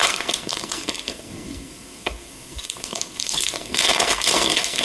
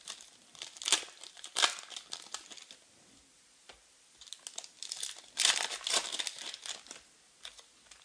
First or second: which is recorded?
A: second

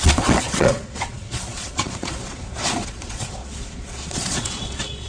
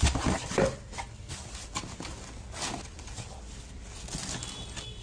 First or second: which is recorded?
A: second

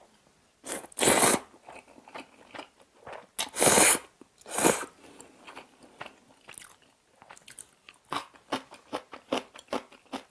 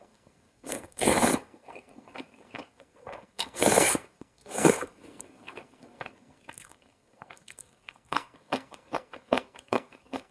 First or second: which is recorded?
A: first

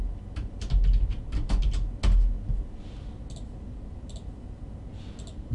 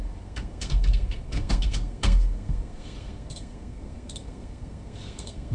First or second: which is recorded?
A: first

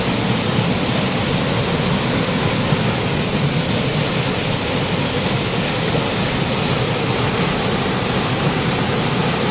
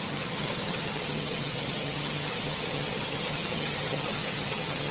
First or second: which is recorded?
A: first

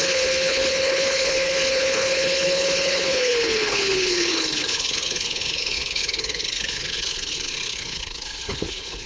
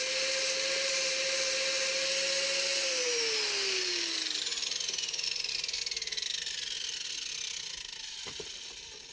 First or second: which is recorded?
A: second